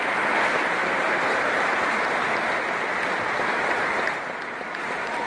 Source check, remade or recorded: recorded